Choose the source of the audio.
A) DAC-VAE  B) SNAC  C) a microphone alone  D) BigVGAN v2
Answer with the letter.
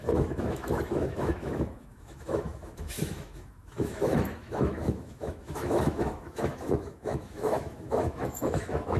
A